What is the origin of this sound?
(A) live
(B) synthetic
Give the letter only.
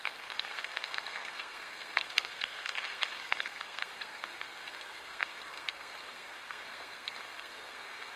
B